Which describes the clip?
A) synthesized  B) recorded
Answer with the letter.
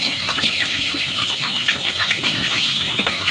A